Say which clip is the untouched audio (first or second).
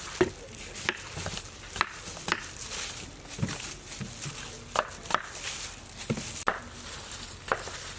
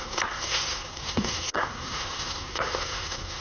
first